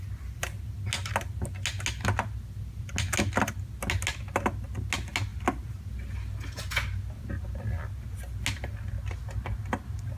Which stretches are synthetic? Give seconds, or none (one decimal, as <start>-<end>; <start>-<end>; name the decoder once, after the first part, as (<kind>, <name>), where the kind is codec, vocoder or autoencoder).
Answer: none